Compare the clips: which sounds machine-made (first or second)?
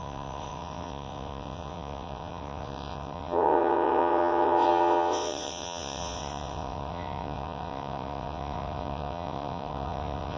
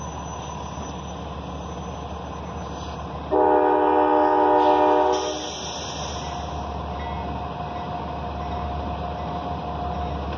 first